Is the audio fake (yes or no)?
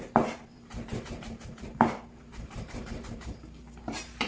yes